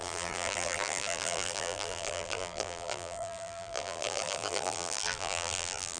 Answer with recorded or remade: remade